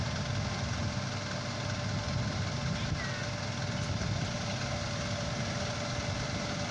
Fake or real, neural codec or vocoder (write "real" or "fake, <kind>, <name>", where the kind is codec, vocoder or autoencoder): real